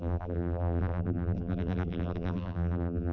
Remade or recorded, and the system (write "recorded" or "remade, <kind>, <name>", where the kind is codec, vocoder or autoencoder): remade, vocoder, BigVGAN v2